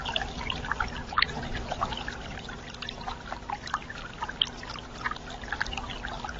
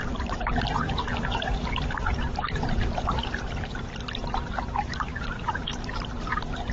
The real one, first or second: first